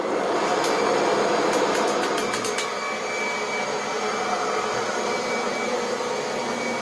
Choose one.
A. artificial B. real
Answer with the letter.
B